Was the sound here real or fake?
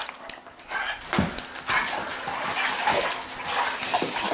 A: real